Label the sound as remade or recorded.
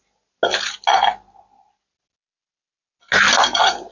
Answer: recorded